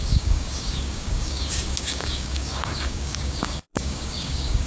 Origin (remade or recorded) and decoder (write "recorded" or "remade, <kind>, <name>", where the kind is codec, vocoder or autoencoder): remade, codec, DAC